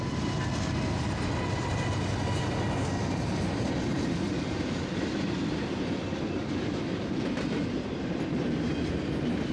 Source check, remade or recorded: recorded